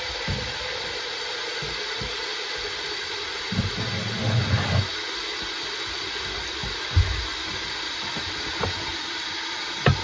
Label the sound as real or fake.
real